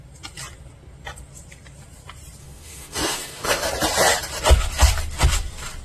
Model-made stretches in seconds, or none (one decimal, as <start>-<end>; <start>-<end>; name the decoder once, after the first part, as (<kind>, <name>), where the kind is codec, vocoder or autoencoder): 2.4-3.7 (autoencoder, DAC-VAE)